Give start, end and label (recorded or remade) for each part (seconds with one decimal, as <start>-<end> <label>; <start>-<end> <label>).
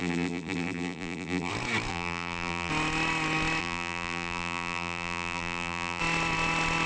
0.0-1.5 remade; 1.5-1.9 recorded; 1.9-2.7 remade; 2.7-3.6 recorded; 3.6-6.0 remade; 6.0-6.9 recorded